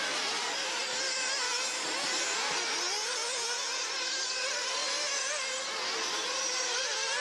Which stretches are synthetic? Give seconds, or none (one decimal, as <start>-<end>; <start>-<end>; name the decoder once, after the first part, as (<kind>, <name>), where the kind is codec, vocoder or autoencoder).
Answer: none